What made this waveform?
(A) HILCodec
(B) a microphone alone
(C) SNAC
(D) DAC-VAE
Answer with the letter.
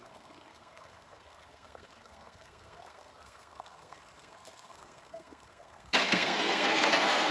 C